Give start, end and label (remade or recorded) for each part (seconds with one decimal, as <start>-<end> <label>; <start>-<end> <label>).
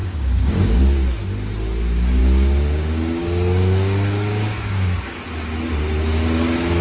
0.0-0.8 remade; 0.8-2.2 recorded; 2.2-5.2 remade; 5.2-6.8 recorded